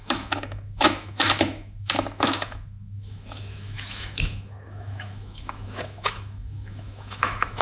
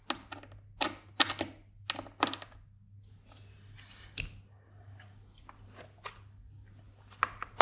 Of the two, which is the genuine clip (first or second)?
second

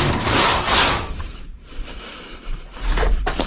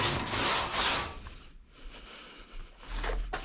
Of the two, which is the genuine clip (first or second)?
second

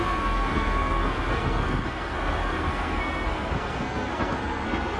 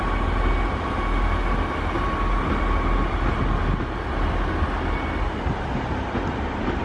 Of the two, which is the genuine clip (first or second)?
second